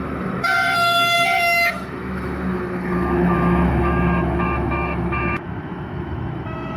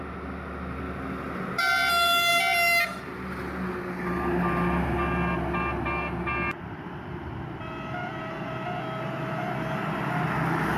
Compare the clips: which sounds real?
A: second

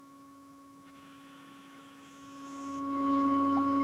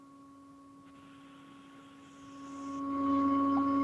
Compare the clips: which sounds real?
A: second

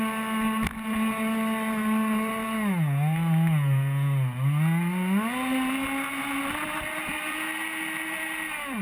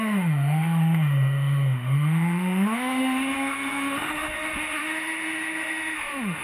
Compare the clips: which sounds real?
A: first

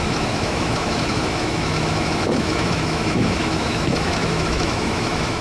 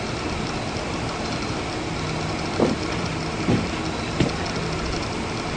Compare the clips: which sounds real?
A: second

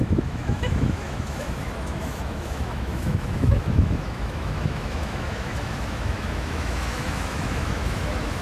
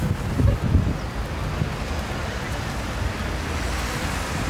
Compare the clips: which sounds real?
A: second